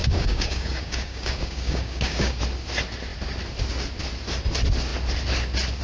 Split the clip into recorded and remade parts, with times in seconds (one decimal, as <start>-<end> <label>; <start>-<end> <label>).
0.0-2.4 remade; 2.4-5.8 recorded